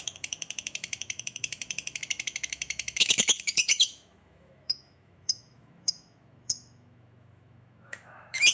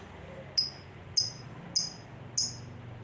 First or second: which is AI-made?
first